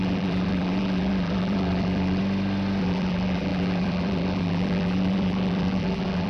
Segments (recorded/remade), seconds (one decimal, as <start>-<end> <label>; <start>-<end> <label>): 0.0-2.2 remade; 2.2-2.8 recorded; 2.8-6.3 remade